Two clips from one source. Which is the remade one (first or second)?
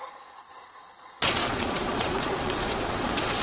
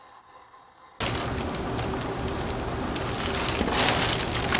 first